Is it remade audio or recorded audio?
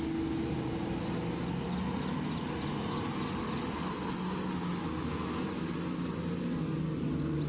recorded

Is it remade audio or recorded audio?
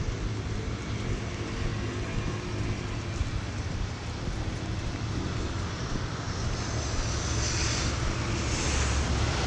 recorded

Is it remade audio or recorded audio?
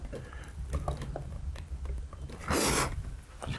recorded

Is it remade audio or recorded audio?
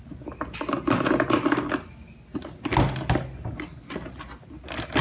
recorded